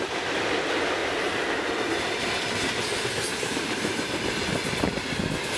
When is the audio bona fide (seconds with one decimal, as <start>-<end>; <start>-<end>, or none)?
0.0-1.0; 1.6-3.3; 4.3-5.6